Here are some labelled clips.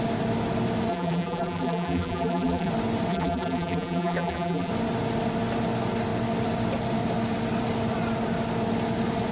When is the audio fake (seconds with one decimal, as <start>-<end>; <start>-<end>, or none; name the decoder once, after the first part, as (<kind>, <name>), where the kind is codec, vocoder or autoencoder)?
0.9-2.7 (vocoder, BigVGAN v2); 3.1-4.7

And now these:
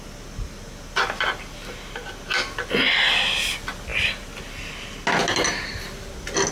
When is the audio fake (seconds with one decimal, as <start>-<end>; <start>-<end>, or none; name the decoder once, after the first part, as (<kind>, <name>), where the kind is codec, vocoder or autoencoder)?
none

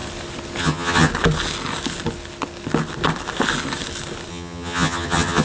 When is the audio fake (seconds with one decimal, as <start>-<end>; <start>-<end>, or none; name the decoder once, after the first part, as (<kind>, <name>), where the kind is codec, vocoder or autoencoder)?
0.6-1.1 (vocoder, HiFi-GAN); 4.3-5.4